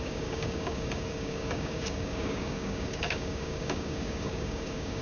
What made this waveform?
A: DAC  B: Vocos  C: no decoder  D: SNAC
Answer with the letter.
A